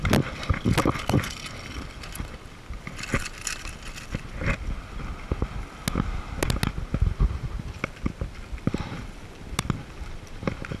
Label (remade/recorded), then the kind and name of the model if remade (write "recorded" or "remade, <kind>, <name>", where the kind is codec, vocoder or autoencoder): recorded